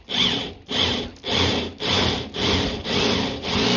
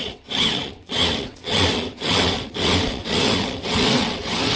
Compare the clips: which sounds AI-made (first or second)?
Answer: second